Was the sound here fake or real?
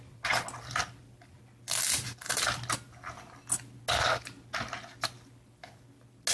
real